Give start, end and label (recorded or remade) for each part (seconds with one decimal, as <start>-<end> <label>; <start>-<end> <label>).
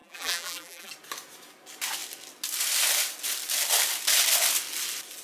0.0-0.9 remade; 0.9-5.2 recorded